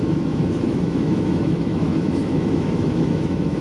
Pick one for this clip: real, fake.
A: fake